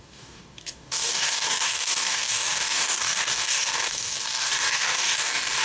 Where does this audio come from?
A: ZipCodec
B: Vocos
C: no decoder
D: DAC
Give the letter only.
D